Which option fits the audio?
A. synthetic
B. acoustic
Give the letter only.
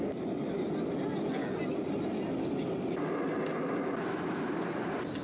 B